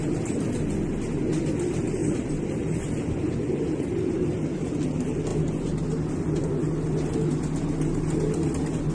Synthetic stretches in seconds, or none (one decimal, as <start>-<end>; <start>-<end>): 2.0-4.7